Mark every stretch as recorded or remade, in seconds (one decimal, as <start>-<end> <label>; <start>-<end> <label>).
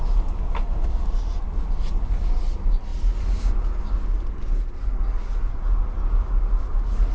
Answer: 0.0-7.1 recorded